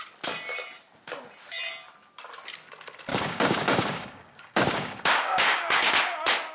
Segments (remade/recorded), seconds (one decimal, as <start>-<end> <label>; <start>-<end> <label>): 0.0-3.1 recorded; 3.1-5.9 remade; 5.9-6.5 recorded